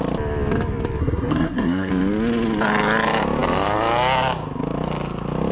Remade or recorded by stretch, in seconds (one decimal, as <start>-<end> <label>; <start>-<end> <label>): 0.0-1.0 recorded; 1.0-1.9 remade; 1.9-5.5 recorded